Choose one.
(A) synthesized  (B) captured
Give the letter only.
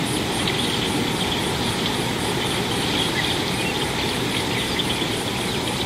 B